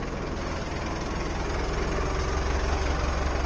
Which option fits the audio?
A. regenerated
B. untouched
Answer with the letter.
B